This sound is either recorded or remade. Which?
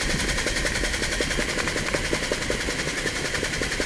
recorded